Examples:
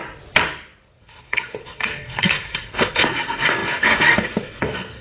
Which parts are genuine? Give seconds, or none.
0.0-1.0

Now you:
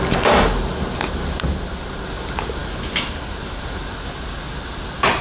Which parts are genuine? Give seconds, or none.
0.0-5.2